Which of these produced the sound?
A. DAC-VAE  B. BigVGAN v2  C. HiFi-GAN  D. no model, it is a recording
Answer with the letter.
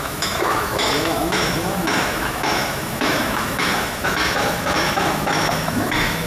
A